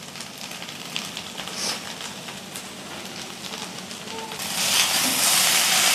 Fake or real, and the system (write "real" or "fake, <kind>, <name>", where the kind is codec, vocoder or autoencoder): fake, vocoder, BigVGAN v2